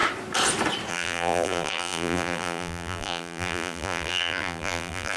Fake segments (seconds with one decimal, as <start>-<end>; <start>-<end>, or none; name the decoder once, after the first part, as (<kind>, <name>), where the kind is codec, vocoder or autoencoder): 0.9-5.2 (vocoder, BigVGAN v2)